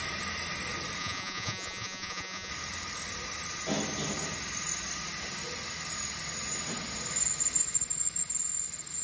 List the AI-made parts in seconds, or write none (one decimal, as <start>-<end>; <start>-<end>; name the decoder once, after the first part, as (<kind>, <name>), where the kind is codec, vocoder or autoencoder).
1.0-2.5 (vocoder, Vocos)